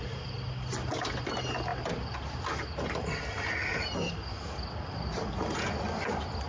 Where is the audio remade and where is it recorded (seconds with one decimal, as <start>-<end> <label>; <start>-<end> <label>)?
0.0-6.5 recorded